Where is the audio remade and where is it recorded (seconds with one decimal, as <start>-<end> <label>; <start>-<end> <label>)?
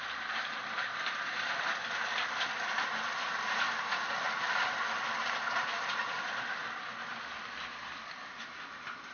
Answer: 0.0-9.1 recorded